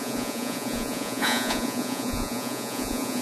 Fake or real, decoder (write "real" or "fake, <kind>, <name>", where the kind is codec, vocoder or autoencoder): fake, vocoder, Vocos